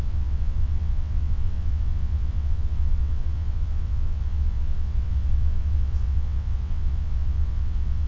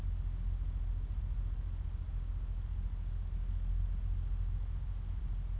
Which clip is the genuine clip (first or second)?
second